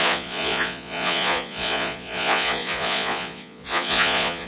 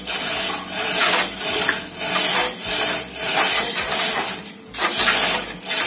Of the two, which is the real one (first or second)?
second